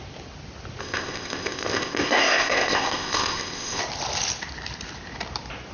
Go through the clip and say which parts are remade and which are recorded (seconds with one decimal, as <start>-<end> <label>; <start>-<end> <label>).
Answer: 0.0-0.8 recorded; 0.8-3.8 remade; 3.8-5.7 recorded